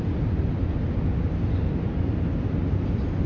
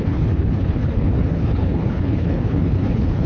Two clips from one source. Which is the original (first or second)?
first